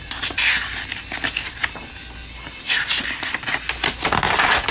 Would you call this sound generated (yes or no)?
no